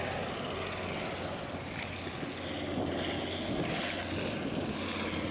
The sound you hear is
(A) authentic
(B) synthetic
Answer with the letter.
A